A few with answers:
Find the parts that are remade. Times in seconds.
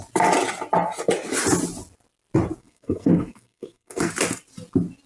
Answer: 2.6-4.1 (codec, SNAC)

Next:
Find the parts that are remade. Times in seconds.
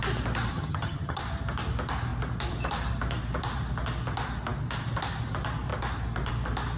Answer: 0.5-1.2 (vocoder, HiFi-GAN)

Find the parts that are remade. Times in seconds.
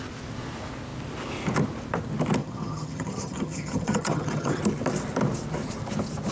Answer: 2.4-4.6 (vocoder, HiFi-GAN)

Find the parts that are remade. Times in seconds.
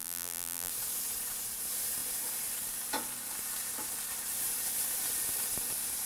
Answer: 0.0-0.7 (vocoder, BigVGAN v2)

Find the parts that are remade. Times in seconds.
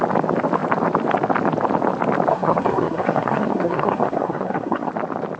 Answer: 2.3-4.9 (codec, SNAC)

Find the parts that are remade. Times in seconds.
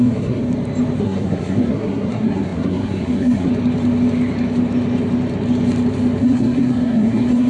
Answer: 0.0-0.4 (codec, SNAC); 1.0-3.5; 6.2-7.5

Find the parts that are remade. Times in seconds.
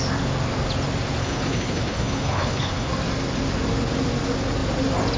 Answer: 1.2-2.9 (codec, HILCodec)